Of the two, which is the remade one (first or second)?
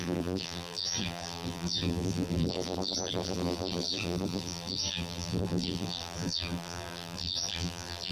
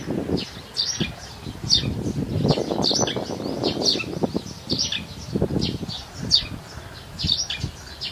first